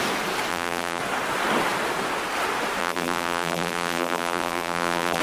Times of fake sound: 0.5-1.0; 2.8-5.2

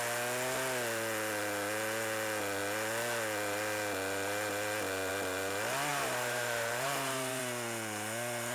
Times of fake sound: 5.9-7.4

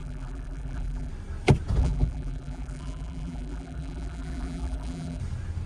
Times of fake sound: 0.0-1.1; 1.8-5.2

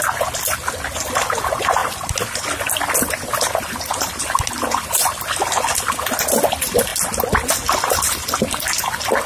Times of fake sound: 1.8-4.2

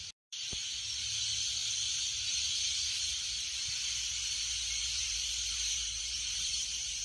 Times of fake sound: 4.8-7.0

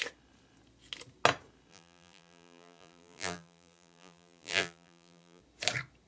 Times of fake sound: 1.7-5.4

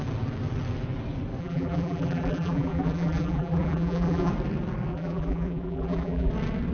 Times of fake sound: 1.4-4.3; 4.9-6.3